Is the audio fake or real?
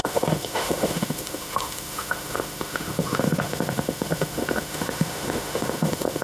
fake